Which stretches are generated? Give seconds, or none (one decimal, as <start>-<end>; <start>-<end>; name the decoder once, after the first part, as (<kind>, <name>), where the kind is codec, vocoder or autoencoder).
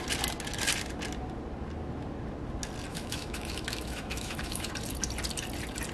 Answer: 2.9-4.7 (autoencoder, DAC-VAE)